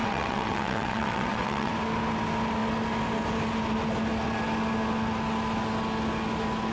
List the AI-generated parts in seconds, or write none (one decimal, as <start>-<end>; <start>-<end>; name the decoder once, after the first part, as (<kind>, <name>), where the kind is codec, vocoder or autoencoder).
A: 0.0-1.7 (vocoder, WaveNeXt)